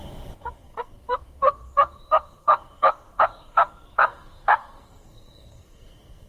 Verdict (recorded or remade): remade